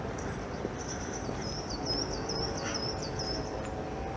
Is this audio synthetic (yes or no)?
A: no